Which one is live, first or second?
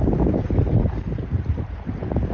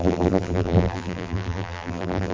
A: first